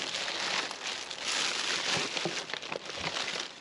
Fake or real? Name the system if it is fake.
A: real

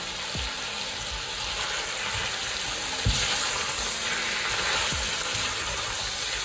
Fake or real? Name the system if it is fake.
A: real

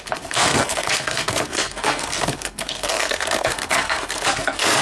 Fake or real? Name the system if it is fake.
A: fake, codec, SNAC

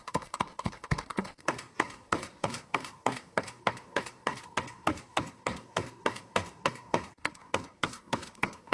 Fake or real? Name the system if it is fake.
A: fake, codec, SNAC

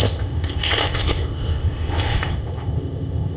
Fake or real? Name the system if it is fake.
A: fake, codec, ZipCodec